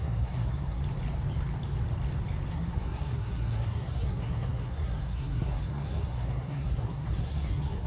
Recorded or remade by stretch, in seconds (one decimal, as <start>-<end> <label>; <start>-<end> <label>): 0.0-0.8 remade; 0.8-2.5 recorded; 2.5-7.9 remade